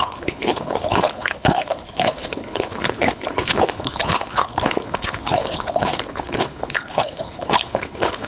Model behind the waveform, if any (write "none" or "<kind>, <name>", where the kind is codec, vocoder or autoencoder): codec, HILCodec